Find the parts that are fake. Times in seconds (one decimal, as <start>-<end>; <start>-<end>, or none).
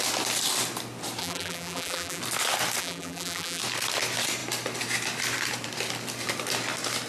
1.2-2.2; 2.8-3.6